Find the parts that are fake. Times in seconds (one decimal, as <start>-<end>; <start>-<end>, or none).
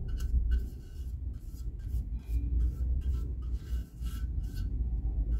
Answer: none